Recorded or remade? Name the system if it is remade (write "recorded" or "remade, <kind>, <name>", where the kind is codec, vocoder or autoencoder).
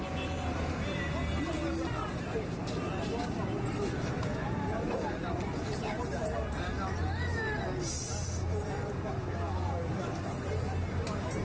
recorded